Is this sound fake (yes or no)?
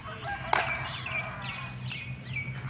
no